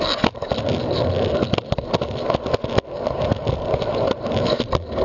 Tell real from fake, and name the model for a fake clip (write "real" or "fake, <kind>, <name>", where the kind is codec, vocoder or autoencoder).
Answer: real